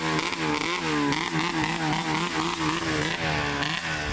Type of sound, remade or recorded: recorded